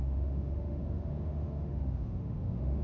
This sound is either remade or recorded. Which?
remade